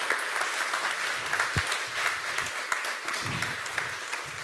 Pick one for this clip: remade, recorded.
recorded